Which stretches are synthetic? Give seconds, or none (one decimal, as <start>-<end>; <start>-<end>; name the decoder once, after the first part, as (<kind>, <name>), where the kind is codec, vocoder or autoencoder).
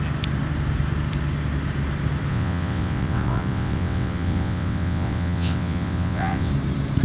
2.3-6.5 (vocoder, WaveNeXt)